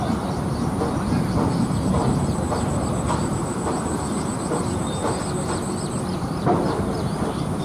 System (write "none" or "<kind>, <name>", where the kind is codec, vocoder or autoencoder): vocoder, BigVGAN v2